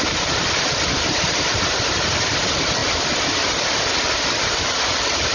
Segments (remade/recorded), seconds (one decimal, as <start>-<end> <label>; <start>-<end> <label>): 0.0-5.3 recorded